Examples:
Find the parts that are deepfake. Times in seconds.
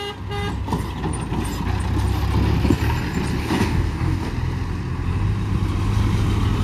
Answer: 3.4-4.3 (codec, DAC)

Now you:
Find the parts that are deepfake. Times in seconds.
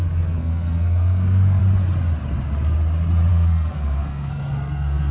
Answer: 0.0-1.6 (codec, SNAC); 3.3-5.1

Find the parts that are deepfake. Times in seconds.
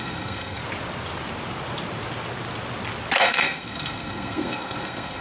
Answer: 0.0-0.6 (codec, SNAC); 3.2-5.2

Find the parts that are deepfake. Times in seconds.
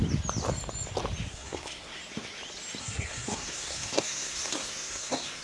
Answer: 1.3-2.0 (codec, SNAC); 2.8-5.4